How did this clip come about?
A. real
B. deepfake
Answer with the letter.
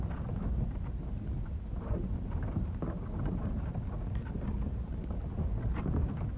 A